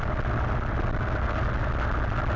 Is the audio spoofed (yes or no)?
no